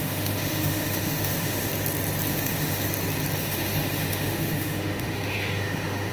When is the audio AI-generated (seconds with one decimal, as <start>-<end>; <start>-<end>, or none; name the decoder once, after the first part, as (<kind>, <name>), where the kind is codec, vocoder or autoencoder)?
0.0-1.7 (autoencoder, DAC-VAE); 2.3-2.8; 3.4-6.1